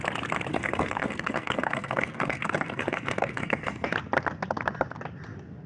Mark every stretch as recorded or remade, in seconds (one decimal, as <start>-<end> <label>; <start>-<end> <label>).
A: 0.0-0.5 recorded; 0.5-3.9 remade; 3.9-5.7 recorded